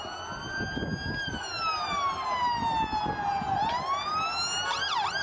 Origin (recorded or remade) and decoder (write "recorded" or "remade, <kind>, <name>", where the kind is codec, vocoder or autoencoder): recorded